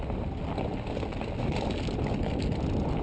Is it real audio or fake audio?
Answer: real